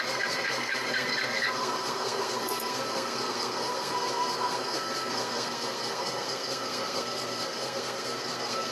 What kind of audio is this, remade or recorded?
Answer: remade